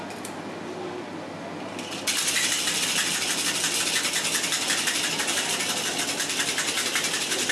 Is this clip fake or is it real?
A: real